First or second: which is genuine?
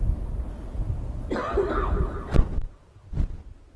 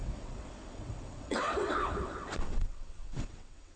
first